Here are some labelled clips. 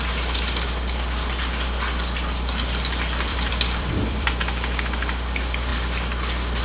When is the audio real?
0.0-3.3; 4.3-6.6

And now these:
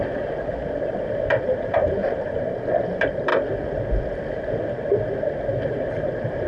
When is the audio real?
3.3-5.6

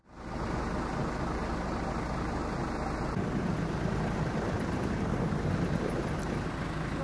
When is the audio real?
0.0-7.0